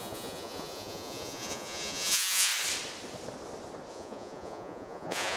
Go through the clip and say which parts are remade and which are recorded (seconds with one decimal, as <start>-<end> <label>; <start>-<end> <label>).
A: 0.0-2.5 remade; 2.5-3.9 recorded; 3.9-5.4 remade